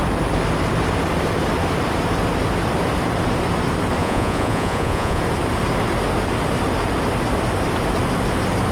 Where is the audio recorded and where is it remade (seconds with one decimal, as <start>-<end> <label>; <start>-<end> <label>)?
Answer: 0.0-4.0 recorded; 4.0-5.2 remade; 5.2-8.7 recorded